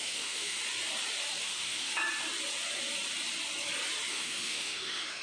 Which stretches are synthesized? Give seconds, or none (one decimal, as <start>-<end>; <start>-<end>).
0.0-0.6; 1.4-1.9; 4.1-5.2